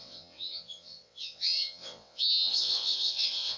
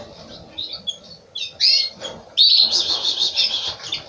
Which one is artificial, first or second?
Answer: first